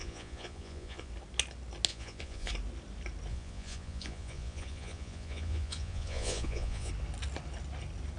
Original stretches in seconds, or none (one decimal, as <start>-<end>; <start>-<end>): 1.1-1.9; 2.5-3.3; 6.9-8.2